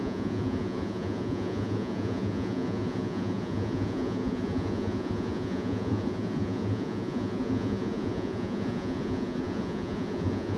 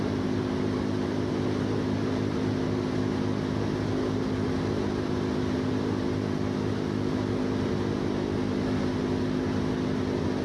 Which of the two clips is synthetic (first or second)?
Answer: first